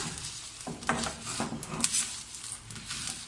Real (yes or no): yes